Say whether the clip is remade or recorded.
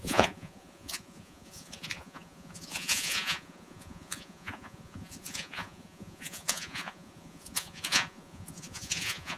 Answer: remade